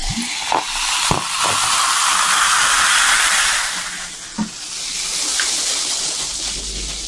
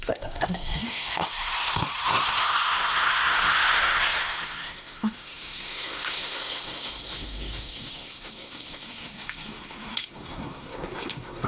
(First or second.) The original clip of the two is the first